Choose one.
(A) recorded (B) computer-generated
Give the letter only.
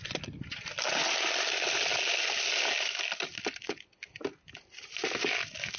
A